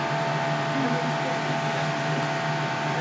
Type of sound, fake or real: real